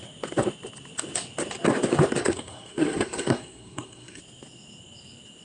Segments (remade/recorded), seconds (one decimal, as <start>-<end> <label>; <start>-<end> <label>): 0.0-2.2 recorded; 2.2-4.2 remade; 4.2-5.4 recorded